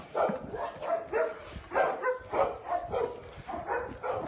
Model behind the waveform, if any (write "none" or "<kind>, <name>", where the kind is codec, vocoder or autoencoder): none